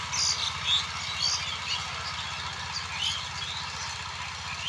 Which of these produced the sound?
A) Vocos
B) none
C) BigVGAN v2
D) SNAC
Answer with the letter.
B